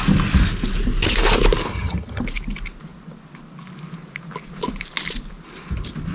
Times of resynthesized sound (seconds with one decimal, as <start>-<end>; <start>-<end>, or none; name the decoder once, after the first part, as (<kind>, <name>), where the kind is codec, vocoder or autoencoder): 1.7-2.2 (vocoder, HiFi-GAN)